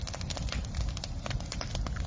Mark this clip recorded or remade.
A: recorded